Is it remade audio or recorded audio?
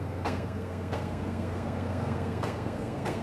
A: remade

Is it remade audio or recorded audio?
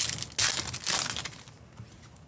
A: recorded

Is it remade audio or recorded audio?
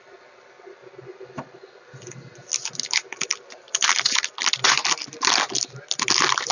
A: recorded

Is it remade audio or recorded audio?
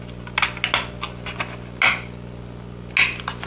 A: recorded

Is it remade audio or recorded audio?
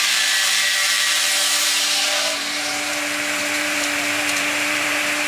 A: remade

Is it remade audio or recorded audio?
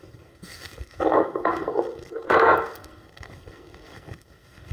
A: remade